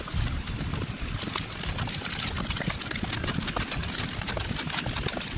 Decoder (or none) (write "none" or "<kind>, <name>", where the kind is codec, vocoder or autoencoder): none